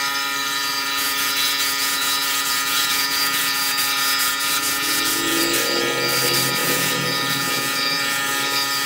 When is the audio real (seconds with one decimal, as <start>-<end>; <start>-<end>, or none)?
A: 0.0-0.4; 5.4-6.6; 8.3-8.9

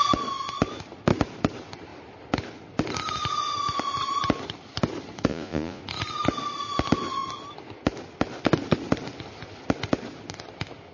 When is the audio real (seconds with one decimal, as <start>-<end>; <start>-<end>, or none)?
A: 0.0-5.3; 5.8-10.9

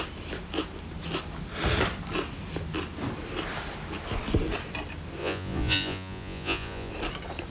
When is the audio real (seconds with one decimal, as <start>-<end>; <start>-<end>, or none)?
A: 0.0-5.2; 6.9-7.5

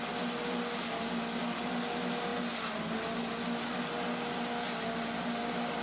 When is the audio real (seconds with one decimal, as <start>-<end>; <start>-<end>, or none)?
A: 0.0-5.8

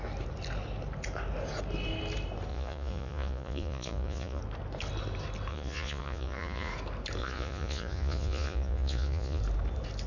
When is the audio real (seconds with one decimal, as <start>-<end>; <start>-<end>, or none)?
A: 0.0-2.5; 4.4-5.5; 6.7-7.2; 9.4-10.1

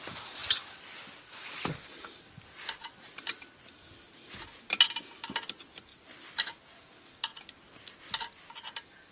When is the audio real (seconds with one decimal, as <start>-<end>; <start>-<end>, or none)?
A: 0.0-9.1

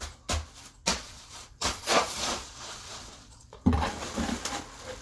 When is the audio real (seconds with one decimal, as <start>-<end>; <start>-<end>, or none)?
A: 0.0-0.9; 3.9-5.0

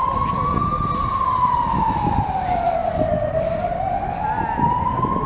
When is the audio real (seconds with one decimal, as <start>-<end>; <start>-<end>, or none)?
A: 0.0-5.3